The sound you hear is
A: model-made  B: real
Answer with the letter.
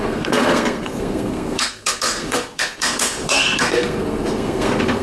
A